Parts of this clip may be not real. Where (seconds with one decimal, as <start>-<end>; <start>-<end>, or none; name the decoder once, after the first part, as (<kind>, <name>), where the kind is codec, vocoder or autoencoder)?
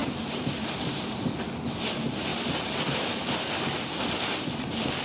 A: none